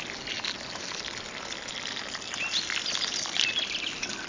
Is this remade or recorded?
recorded